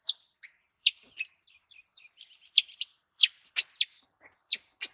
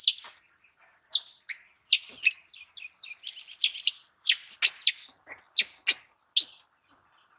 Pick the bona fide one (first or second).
second